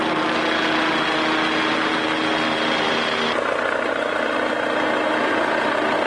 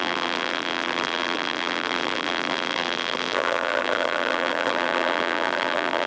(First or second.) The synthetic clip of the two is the second